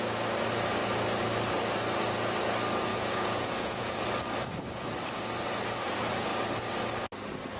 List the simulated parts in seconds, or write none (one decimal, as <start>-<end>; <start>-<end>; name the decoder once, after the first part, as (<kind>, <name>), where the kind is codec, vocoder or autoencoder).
2.9-4.0 (vocoder, Vocos)